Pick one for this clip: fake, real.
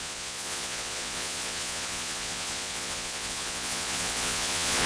fake